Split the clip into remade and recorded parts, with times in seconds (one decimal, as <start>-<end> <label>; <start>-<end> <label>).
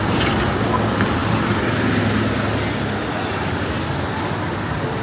0.0-5.0 recorded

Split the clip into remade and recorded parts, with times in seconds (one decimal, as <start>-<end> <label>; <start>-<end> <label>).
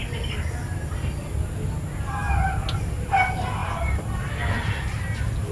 0.0-5.5 recorded